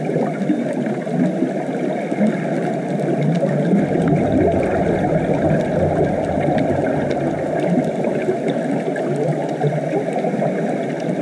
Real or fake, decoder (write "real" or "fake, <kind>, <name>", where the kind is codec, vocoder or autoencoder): real